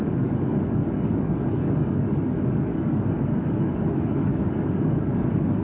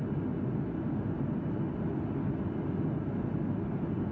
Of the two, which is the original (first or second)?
second